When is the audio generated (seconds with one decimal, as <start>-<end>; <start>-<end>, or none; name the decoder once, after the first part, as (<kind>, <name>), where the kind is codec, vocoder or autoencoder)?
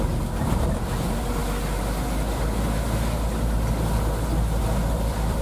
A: 0.0-1.4 (vocoder, BigVGAN v2); 4.6-5.4